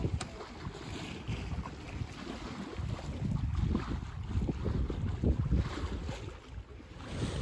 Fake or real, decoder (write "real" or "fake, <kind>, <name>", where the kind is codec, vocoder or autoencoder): real